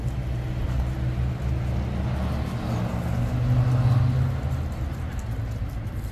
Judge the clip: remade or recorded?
recorded